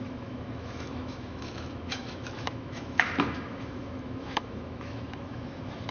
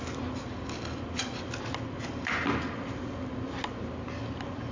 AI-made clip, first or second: first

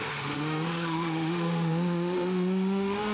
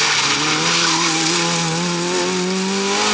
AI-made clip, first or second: first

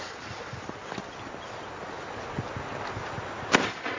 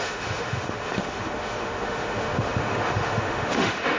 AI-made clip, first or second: second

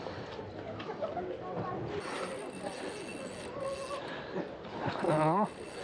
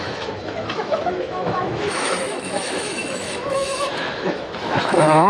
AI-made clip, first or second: second